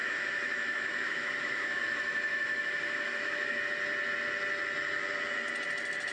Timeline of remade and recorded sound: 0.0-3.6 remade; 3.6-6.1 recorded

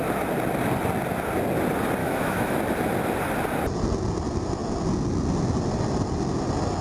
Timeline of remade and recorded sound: 0.0-2.0 recorded; 2.0-2.6 remade; 2.6-6.8 recorded

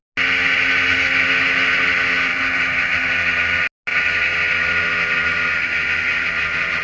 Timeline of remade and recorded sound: 0.0-6.8 recorded

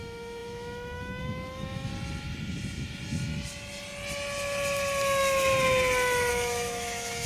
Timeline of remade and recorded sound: 0.0-1.9 remade; 1.9-6.3 recorded; 6.3-7.3 remade

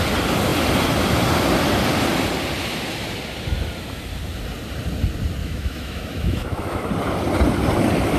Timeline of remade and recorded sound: 0.0-5.4 recorded; 5.4-6.9 remade; 6.9-8.2 recorded